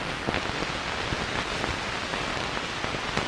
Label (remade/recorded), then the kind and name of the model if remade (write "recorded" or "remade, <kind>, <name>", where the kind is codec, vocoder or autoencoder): recorded